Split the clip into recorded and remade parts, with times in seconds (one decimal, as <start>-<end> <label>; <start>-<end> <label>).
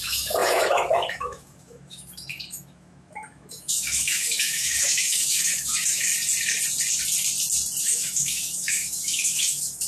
0.0-6.1 remade; 6.1-7.8 recorded; 7.8-9.9 remade